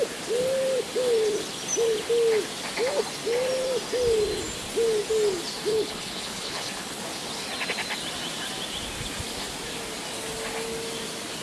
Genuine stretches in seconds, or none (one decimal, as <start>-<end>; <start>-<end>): 0.0-5.7; 7.0-11.4